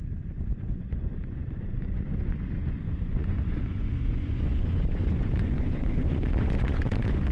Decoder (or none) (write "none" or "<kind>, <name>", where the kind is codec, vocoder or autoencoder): vocoder, Vocos